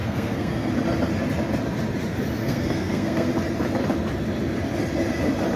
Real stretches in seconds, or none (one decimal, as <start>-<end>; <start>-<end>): 0.7-2.4; 3.3-5.6